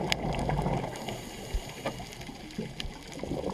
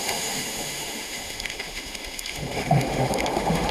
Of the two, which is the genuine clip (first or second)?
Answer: first